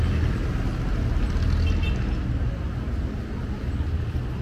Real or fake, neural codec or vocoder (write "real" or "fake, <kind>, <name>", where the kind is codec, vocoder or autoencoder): real